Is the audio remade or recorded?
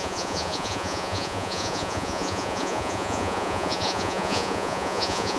remade